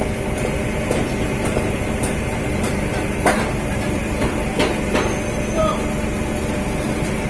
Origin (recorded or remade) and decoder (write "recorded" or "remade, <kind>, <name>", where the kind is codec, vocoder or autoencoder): recorded